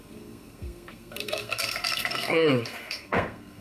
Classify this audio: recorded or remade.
remade